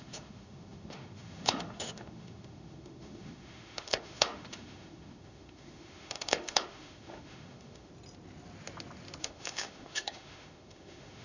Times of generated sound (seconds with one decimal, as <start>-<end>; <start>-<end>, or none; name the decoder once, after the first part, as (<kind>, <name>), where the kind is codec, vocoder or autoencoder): 0.0-7.9 (autoencoder, DAC-VAE); 9.2-11.2